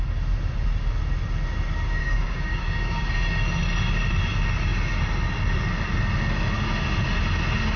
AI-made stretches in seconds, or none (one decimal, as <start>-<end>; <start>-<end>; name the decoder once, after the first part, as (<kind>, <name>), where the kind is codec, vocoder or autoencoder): 2.0-3.1 (codec, DAC)